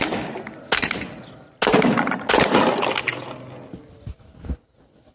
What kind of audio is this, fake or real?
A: real